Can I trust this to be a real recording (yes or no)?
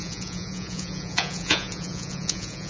no